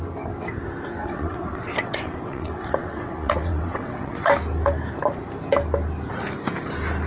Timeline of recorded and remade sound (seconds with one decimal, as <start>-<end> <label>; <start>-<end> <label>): 0.0-1.0 recorded; 1.0-4.3 remade; 4.3-7.1 recorded

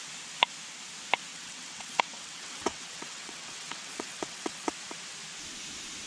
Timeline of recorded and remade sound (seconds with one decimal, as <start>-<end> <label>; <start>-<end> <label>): 0.0-1.3 recorded; 1.3-4.7 remade; 4.7-6.1 recorded